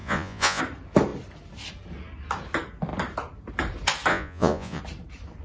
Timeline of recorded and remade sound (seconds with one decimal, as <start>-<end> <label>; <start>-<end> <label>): 0.0-0.6 remade; 0.6-4.1 recorded; 4.1-4.8 remade; 4.8-5.4 recorded